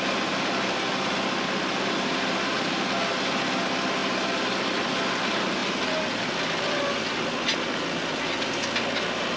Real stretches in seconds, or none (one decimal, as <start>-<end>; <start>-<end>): 0.0-9.4